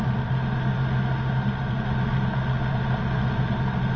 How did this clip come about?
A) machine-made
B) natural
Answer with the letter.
B